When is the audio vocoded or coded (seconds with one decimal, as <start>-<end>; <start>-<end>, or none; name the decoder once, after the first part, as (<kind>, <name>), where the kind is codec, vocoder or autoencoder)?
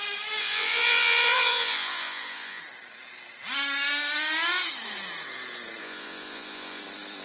0.4-2.6 (vocoder, Vocos); 5.8-6.8